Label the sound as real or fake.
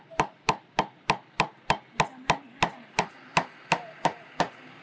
real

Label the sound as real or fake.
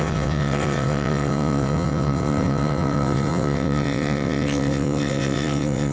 fake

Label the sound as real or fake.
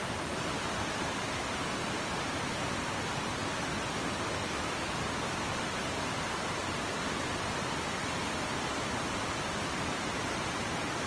real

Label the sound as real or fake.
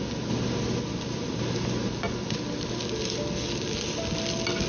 real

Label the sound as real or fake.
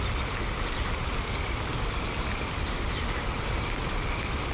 real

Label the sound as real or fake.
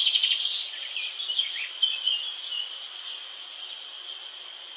real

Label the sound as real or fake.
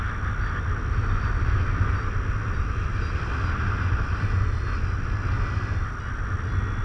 real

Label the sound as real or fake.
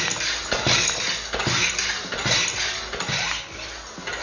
real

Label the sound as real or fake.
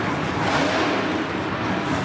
real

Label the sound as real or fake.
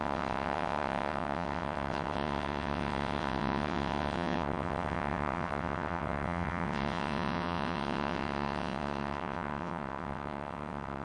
fake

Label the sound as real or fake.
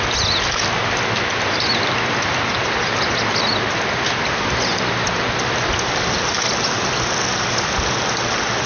real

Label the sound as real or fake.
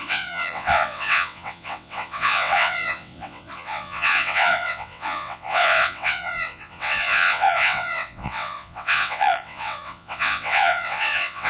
fake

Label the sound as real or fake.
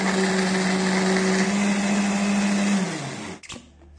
real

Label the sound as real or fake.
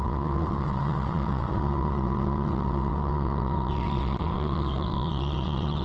fake